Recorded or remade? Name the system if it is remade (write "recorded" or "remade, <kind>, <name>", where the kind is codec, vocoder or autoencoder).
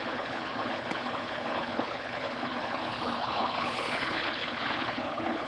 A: remade, codec, HILCodec